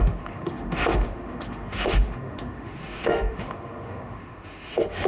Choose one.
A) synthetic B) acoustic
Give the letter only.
A